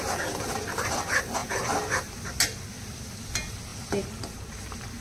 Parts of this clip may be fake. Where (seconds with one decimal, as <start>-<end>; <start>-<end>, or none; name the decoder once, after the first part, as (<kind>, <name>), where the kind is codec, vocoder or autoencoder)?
3.7-4.2 (vocoder, BigVGAN v2)